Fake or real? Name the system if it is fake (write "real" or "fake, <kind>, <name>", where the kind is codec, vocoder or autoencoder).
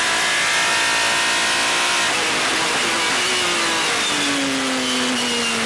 real